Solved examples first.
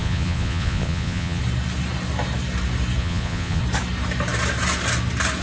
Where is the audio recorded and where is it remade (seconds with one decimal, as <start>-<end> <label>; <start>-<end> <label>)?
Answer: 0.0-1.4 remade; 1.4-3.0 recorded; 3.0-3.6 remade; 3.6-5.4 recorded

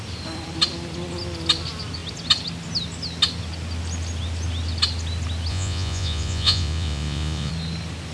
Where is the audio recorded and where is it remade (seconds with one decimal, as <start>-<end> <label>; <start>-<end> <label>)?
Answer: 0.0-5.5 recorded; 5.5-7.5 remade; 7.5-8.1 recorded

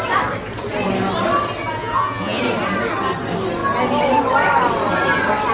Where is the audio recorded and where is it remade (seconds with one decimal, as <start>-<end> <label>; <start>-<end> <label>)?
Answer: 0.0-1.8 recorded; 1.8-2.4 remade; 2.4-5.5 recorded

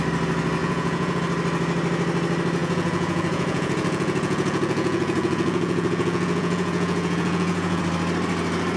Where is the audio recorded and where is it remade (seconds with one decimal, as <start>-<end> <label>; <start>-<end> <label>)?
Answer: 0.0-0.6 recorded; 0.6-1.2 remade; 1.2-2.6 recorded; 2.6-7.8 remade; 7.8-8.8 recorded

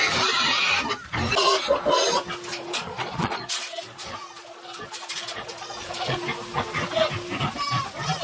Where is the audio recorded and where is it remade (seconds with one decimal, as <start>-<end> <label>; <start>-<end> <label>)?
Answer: 0.0-2.5 recorded; 2.5-6.2 remade; 6.2-8.2 recorded

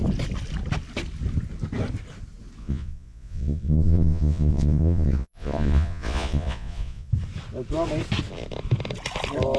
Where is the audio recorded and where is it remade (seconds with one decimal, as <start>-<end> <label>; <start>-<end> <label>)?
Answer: 0.0-2.6 recorded; 2.6-7.1 remade; 7.1-9.6 recorded

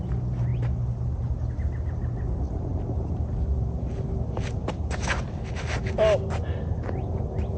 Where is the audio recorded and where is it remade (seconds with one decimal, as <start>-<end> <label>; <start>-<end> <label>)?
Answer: 0.0-7.6 recorded

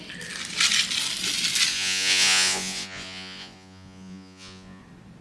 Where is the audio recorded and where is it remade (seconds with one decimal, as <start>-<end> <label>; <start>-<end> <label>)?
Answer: 0.0-1.7 recorded; 1.7-4.8 remade; 4.8-5.2 recorded